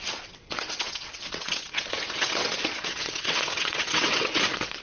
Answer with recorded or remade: remade